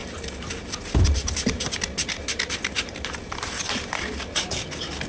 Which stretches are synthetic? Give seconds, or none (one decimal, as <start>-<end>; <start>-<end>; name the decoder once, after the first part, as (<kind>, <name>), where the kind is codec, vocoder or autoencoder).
none